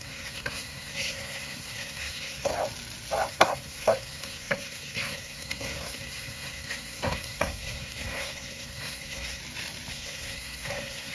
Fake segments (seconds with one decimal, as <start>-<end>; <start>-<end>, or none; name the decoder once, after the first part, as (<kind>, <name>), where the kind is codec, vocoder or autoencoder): 0.0-2.5 (codec, SNAC); 3.3-9.4; 9.9-11.1